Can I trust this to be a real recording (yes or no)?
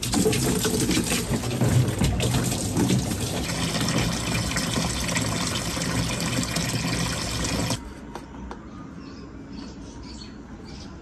yes